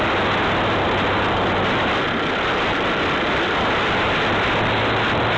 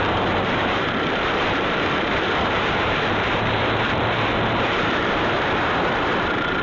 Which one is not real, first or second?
second